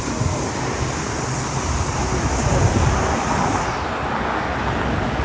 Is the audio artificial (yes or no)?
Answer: no